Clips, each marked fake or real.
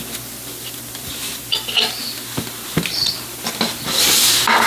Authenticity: real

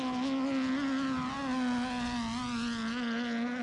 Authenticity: real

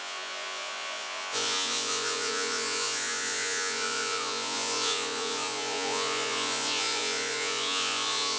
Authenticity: fake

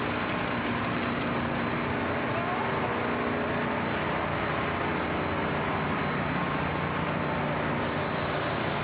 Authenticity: real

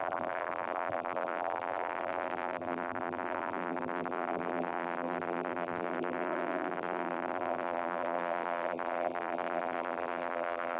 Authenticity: fake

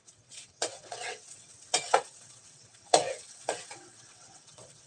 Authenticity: fake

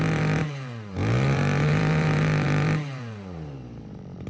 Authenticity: fake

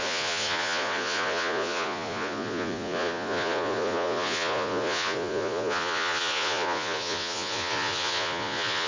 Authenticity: fake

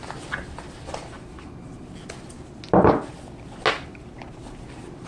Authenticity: real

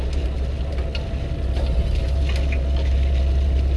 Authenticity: real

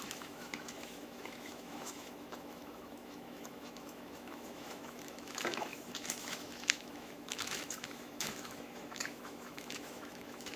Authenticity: fake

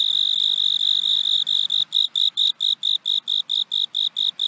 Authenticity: real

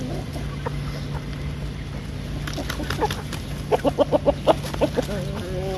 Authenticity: real